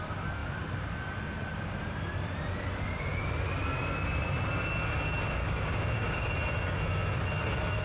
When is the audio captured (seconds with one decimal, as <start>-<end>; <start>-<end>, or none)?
0.0-5.4; 6.3-7.8